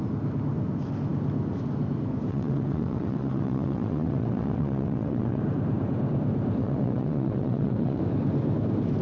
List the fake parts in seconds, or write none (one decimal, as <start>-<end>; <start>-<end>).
2.3-5.4; 6.6-8.0